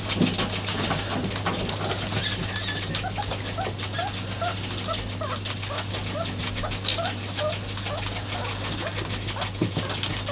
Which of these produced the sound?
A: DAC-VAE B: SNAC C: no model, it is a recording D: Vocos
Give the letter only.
C